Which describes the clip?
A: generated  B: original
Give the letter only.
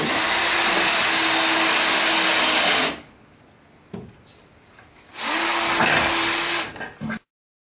B